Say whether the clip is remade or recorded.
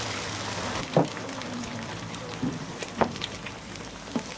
remade